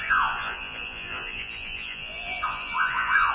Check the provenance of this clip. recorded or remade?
remade